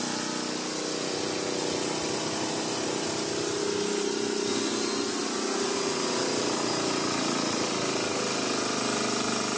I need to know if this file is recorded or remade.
recorded